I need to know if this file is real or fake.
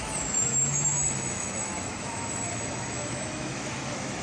fake